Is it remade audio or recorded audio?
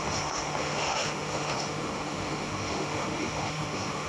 remade